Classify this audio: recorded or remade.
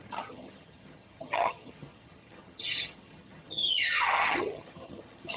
remade